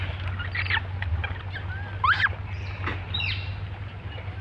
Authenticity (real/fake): real